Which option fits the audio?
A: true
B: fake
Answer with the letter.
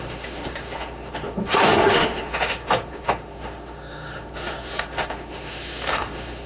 B